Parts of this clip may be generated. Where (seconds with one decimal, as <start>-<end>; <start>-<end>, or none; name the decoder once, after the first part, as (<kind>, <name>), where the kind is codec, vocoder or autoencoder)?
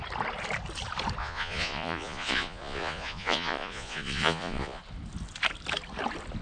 1.2-4.8 (vocoder, Vocos)